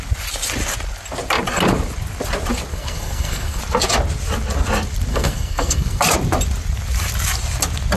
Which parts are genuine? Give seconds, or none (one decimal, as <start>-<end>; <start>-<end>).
0.0-2.7; 3.6-5.1; 6.0-8.0